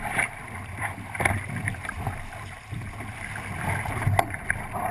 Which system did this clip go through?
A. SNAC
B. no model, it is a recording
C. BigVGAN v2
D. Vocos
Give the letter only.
C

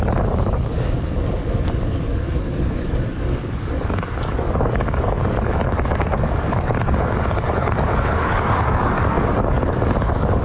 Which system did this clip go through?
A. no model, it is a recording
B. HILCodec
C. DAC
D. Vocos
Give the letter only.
C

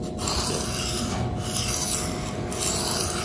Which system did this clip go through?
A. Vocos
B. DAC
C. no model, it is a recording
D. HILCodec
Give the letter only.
C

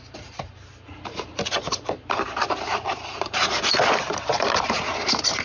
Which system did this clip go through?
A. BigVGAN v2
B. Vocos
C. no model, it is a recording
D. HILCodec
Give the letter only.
A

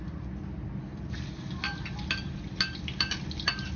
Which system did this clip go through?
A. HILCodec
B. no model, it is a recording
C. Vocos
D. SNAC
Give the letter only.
B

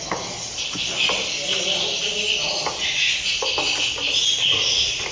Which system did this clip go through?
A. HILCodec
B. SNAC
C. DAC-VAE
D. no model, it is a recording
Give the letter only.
D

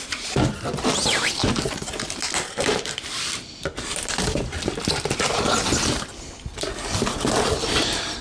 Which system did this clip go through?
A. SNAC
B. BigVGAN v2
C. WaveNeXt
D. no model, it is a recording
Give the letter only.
D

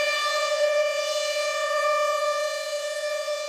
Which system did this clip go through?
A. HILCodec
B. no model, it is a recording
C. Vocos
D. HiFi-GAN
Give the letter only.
C